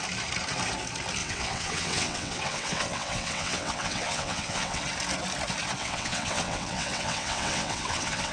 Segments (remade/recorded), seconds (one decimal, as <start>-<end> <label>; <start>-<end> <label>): 0.0-1.2 recorded; 1.2-4.8 remade; 4.8-5.8 recorded; 5.8-8.3 remade